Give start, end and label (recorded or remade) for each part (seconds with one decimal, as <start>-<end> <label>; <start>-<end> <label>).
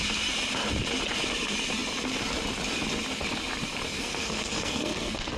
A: 0.0-3.9 recorded; 3.9-5.4 remade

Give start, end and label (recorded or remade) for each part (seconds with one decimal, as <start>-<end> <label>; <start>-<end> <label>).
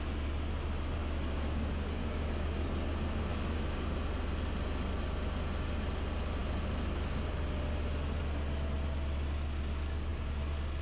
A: 0.0-1.0 recorded; 1.0-2.6 remade; 2.6-3.3 recorded; 3.3-4.0 remade; 4.0-10.8 recorded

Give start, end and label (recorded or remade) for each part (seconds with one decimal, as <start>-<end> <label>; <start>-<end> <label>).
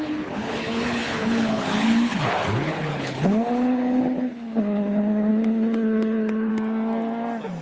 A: 0.0-6.5 remade; 6.5-7.6 recorded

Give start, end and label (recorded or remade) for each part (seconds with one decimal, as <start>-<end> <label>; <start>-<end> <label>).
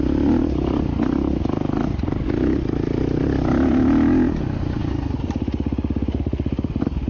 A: 0.0-7.1 recorded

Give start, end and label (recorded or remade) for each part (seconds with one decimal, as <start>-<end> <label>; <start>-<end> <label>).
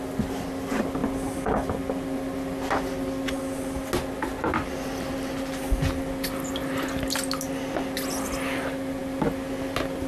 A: 0.0-10.1 recorded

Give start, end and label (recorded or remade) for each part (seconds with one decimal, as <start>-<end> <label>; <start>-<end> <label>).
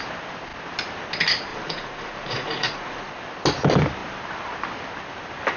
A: 0.0-1.5 recorded; 1.5-3.1 remade; 3.1-5.6 recorded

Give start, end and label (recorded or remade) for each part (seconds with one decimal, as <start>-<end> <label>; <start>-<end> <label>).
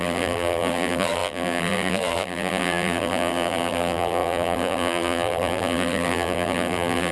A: 0.0-7.1 remade